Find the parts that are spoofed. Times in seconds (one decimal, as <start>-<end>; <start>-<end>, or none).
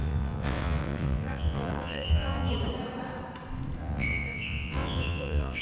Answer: 0.0-2.5; 3.8-5.6